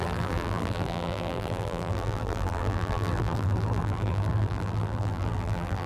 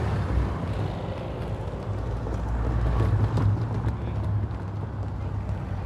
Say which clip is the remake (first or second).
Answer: first